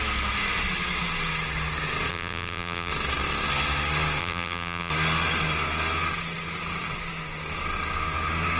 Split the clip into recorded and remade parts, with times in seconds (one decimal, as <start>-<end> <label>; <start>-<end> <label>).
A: 0.0-2.1 recorded; 2.1-2.9 remade; 2.9-4.2 recorded; 4.2-4.9 remade; 4.9-8.6 recorded